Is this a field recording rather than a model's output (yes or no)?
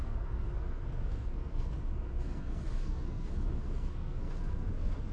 no